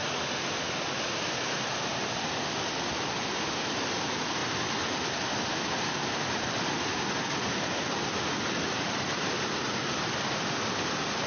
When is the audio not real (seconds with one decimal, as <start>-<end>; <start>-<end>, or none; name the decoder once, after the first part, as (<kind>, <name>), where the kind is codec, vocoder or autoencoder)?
0.0-11.3 (vocoder, BigVGAN v2)